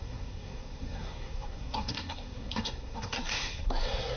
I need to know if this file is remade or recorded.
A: remade